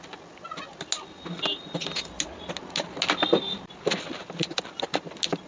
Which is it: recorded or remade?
recorded